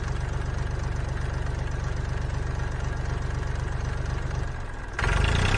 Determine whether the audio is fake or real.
real